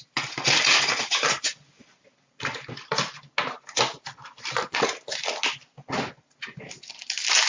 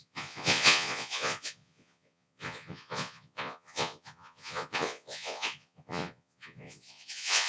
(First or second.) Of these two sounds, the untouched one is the first